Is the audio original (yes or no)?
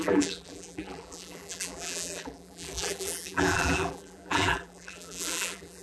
no